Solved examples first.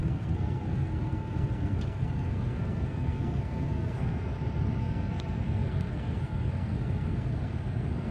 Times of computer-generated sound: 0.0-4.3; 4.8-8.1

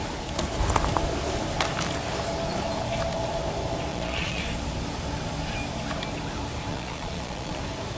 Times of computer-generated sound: 3.9-4.4; 6.7-7.6

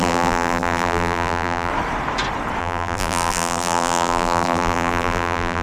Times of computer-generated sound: 0.0-1.7; 2.6-5.6

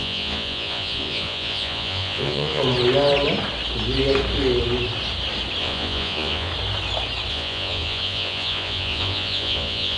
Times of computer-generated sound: 0.0-2.6; 5.6-6.5; 7.3-10.0

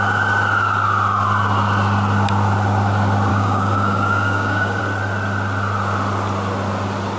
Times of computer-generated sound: 3.3-4.8

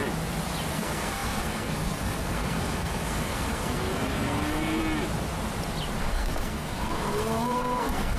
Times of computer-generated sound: 0.7-4.8; 6.0-8.2